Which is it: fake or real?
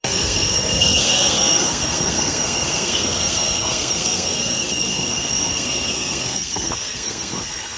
fake